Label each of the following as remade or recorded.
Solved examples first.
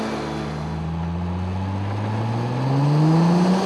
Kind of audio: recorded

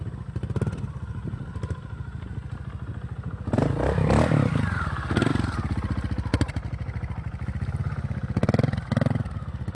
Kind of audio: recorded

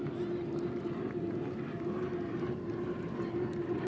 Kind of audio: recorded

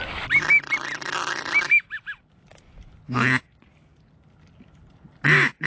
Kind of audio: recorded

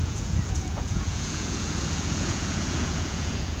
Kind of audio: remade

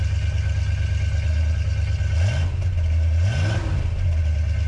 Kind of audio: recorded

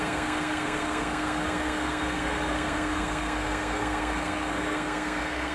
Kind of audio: remade